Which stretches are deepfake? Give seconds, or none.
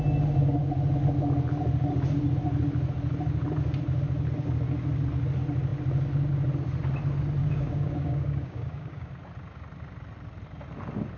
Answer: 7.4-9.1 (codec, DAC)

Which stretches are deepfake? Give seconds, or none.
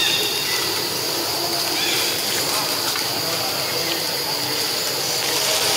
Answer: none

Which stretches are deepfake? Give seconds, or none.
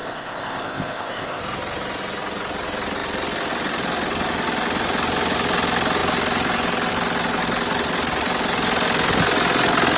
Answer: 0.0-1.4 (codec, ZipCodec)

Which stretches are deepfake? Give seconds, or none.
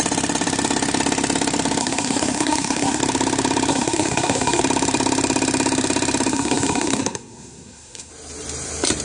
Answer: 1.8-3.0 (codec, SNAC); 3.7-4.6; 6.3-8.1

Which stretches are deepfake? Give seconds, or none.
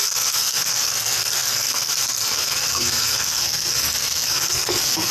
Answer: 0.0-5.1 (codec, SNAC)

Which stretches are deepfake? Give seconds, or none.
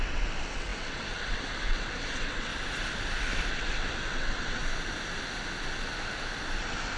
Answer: 0.0-2.5 (vocoder, WaveNeXt); 3.5-4.6; 6.6-7.0